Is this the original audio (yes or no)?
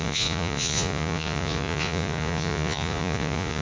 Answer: no